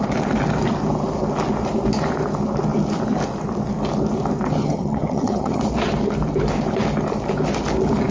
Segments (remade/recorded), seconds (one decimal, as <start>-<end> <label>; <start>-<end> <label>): 0.0-4.6 recorded; 4.6-5.6 remade; 5.6-8.1 recorded